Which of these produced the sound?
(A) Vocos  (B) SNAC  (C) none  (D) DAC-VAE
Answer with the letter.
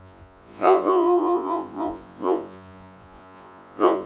A